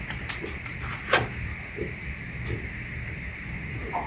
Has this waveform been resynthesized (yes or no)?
yes